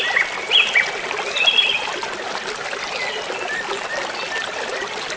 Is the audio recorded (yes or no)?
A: yes